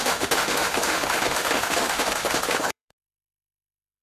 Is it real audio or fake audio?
fake